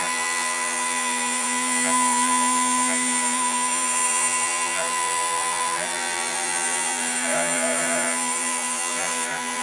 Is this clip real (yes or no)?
no